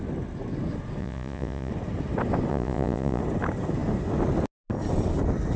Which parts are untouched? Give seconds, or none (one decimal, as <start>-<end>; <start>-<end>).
0.0-1.0; 1.7-2.5; 3.2-5.6